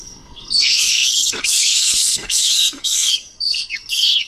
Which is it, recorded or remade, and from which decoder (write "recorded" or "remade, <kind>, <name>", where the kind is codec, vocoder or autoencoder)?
remade, codec, SNAC